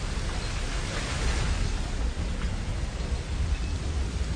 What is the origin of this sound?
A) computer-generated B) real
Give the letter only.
B